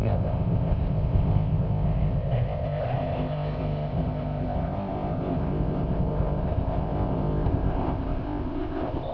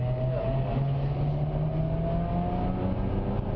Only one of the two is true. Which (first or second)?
second